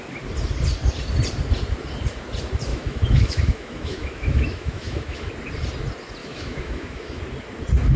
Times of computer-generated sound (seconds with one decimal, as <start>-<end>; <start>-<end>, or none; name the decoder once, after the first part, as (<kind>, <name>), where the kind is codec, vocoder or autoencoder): 2.7-5.3 (autoencoder, DAC-VAE); 6.2-7.2